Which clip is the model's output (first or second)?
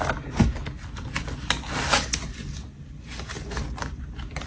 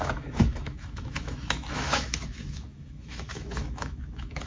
second